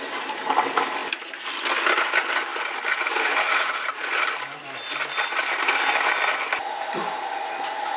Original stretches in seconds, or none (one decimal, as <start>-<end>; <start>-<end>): 0.0-8.0

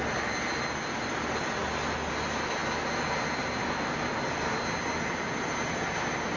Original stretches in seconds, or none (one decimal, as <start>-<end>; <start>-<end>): 0.0-6.4

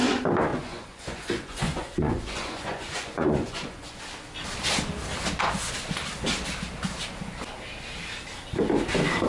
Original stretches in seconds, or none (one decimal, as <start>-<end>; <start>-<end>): 0.0-0.5; 4.0-9.3

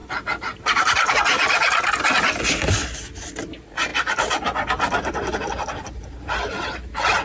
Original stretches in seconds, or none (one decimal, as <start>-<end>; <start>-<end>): 0.0-7.2

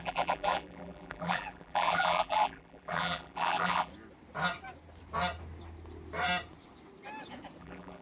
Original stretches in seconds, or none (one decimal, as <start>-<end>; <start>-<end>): 3.9-7.6